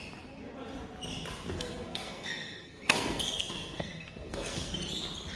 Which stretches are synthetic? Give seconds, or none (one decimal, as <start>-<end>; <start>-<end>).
1.5-4.7